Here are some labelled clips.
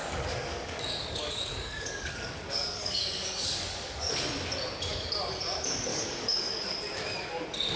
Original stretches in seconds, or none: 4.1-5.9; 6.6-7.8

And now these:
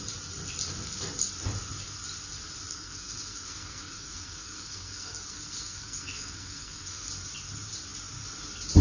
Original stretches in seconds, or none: 0.0-2.7; 7.1-8.8